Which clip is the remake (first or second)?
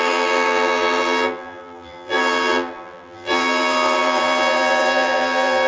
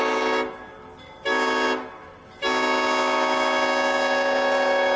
first